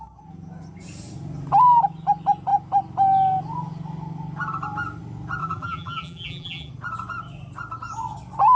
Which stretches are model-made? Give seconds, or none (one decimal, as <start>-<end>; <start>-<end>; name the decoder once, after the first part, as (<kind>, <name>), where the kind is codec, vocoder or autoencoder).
5.4-6.7 (vocoder, BigVGAN v2)